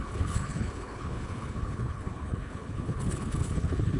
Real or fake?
fake